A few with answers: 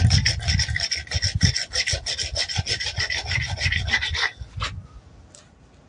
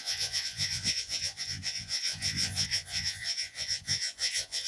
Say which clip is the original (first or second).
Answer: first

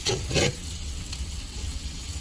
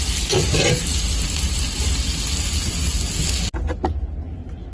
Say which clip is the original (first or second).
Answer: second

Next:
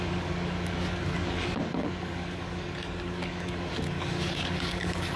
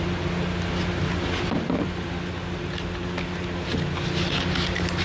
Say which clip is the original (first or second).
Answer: second